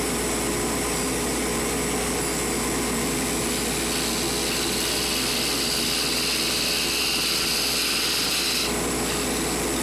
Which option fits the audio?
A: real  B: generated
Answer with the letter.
A